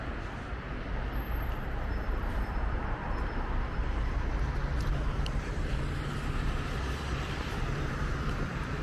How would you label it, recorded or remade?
remade